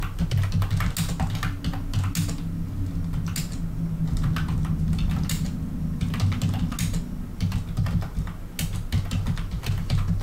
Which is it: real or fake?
real